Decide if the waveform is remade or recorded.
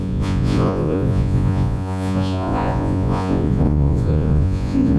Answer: remade